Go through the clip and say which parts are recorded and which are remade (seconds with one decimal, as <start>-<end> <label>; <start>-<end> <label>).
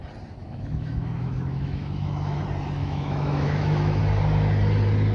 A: 0.0-0.4 recorded; 0.4-2.4 remade; 2.4-2.8 recorded; 2.8-4.0 remade; 4.0-5.1 recorded